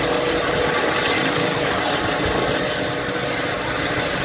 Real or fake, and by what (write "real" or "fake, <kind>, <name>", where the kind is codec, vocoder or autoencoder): real